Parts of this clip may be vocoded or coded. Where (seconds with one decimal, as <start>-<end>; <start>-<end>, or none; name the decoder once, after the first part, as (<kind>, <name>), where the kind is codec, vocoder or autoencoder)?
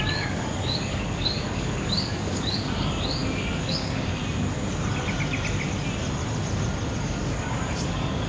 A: 0.0-4.2 (codec, DAC); 7.0-8.3